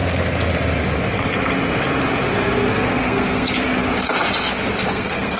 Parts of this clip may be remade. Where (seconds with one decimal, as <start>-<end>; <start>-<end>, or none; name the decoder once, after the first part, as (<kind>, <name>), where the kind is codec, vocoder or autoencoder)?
2.7-3.8 (codec, SNAC); 4.9-5.4